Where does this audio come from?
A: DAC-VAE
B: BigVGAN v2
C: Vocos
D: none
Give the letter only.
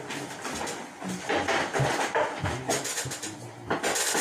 D